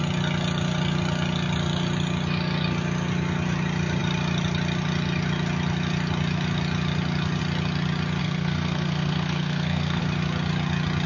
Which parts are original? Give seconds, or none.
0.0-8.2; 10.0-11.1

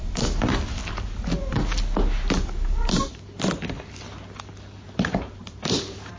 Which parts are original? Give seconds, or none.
0.8-4.5